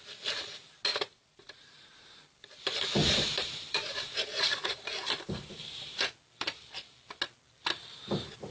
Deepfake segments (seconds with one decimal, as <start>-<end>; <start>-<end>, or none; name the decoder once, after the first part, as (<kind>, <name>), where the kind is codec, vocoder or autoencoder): 0.9-2.2 (vocoder, BigVGAN v2); 3.0-6.0